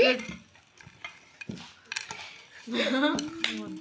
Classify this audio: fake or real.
real